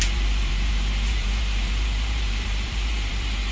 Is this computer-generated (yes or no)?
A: yes